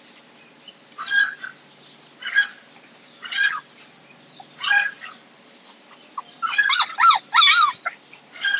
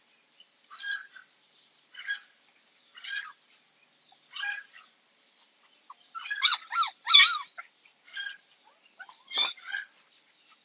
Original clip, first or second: first